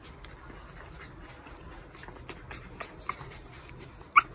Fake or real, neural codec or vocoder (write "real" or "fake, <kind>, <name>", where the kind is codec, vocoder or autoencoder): real